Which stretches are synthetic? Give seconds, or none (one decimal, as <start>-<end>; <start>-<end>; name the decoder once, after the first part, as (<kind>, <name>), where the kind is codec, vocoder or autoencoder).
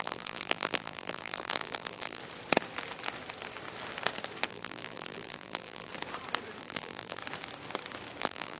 0.0-2.2 (vocoder, BigVGAN v2); 4.5-5.9; 6.6-7.2; 8.2-8.6